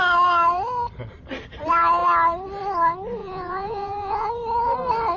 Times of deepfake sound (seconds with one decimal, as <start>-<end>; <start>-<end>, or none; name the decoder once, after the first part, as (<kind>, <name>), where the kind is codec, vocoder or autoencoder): 3.2-4.3 (vocoder, Vocos)